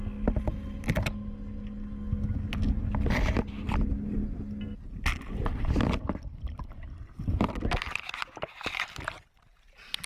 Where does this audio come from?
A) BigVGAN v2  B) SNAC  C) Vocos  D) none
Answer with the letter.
D